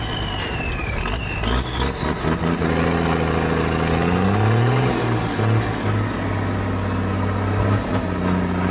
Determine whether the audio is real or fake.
real